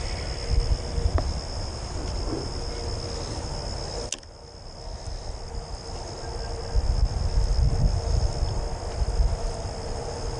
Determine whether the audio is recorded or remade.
recorded